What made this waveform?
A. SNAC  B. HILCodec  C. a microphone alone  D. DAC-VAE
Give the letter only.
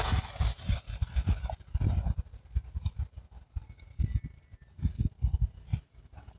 C